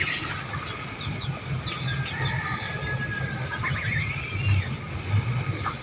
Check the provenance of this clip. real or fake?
real